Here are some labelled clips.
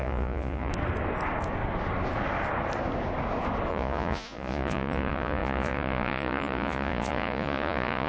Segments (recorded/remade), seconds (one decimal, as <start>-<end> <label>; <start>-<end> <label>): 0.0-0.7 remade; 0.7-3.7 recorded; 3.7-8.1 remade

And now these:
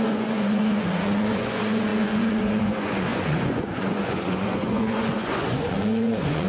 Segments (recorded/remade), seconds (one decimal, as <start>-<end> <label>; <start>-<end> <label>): 0.0-6.5 remade

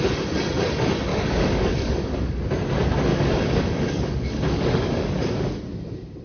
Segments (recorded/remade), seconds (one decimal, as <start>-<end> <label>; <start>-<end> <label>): 0.0-1.1 recorded; 1.1-2.4 remade; 2.4-3.1 recorded; 3.1-5.6 remade; 5.6-6.2 recorded

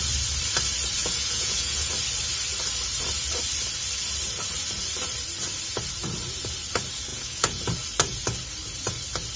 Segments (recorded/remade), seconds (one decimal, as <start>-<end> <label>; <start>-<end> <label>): 0.0-1.0 recorded; 1.0-1.9 remade; 1.9-7.1 recorded; 7.1-7.6 remade; 7.6-9.4 recorded